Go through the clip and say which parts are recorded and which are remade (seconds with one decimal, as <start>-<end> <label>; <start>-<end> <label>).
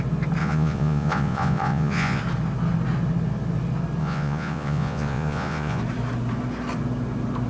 0.0-0.4 recorded; 0.4-2.2 remade; 2.2-4.0 recorded; 4.0-5.8 remade; 5.8-7.5 recorded